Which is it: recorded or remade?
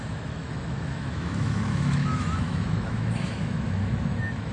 remade